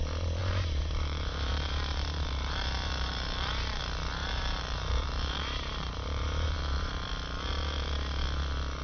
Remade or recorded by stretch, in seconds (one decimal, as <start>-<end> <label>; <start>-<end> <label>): 0.0-0.4 recorded; 0.4-3.8 remade; 3.8-4.2 recorded; 4.2-6.9 remade; 6.9-8.8 recorded